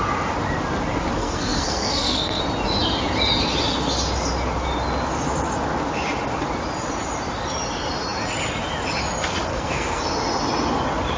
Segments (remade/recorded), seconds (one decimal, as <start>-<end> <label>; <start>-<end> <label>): 0.0-1.2 recorded; 1.2-2.4 remade; 2.4-9.5 recorded; 9.5-10.0 remade; 10.0-11.2 recorded